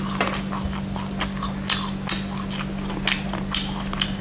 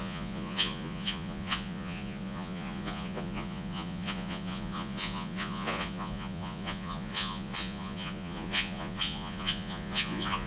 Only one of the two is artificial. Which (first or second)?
second